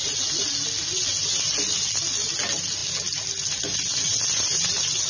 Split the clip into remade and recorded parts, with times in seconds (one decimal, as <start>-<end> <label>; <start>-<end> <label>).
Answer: 0.0-5.1 recorded